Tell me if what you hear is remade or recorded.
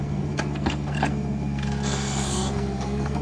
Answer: remade